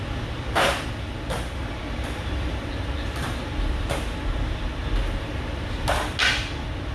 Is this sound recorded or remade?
recorded